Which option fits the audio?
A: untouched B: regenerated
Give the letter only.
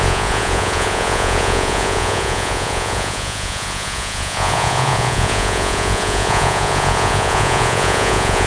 B